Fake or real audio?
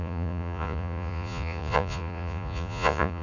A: fake